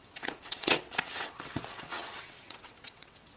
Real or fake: fake